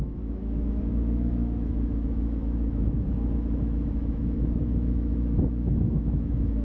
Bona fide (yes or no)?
no